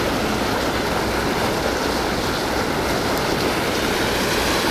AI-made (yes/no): no